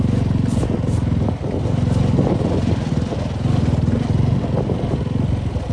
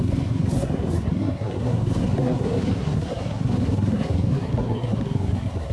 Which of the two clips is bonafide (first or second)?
first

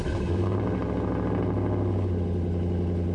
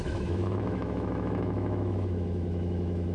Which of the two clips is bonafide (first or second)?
first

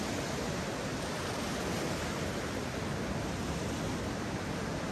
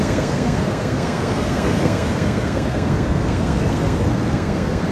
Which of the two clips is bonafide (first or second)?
first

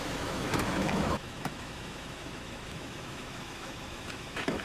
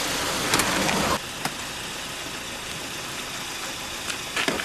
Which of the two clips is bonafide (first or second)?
second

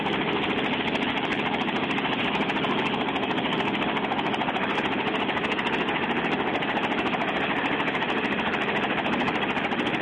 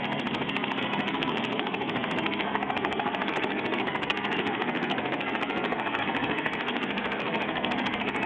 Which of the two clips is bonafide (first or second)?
first